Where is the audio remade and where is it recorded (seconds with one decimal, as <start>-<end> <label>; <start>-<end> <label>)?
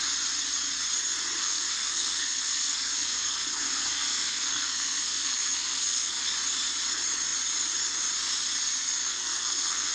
0.0-1.4 recorded; 1.4-6.2 remade; 6.2-9.0 recorded; 9.0-9.9 remade